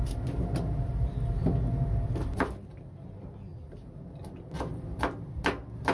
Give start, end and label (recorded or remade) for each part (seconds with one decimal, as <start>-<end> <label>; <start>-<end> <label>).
0.0-5.9 recorded